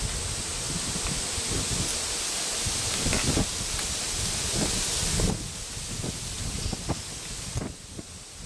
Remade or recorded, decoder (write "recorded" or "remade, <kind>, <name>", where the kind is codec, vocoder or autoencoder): recorded